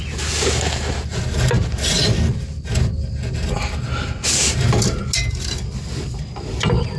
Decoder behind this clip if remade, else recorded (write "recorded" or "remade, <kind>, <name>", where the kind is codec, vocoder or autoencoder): recorded